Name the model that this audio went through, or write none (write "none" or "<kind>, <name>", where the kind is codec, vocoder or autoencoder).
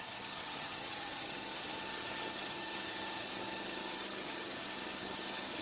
vocoder, HiFi-GAN